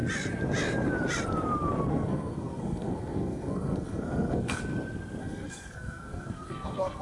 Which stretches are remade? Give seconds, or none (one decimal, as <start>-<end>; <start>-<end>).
1.9-4.6; 5.2-7.0